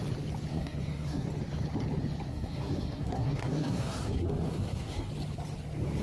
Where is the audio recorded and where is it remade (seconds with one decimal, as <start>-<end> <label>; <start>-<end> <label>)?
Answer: 0.0-0.5 recorded; 0.5-1.3 remade; 1.3-2.3 recorded; 2.3-5.1 remade; 5.1-6.0 recorded